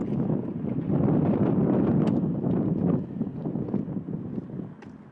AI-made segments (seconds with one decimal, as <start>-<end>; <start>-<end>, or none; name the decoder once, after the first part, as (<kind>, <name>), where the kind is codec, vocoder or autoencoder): none